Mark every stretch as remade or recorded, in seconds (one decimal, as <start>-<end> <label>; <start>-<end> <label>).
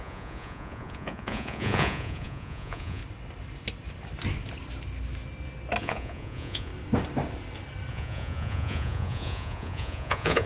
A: 0.0-3.0 remade; 3.0-5.8 recorded; 5.8-6.7 remade; 6.7-7.9 recorded; 7.9-10.5 remade